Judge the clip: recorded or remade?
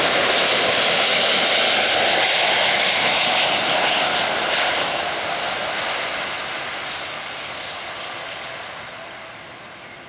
recorded